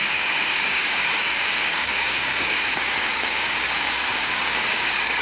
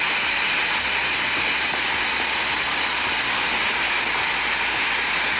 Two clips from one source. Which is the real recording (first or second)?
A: second